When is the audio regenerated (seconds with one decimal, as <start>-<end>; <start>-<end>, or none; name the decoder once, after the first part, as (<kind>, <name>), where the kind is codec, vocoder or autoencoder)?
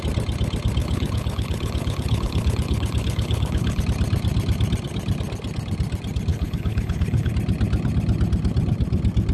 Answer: 0.8-3.8 (codec, HILCodec); 6.3-7.3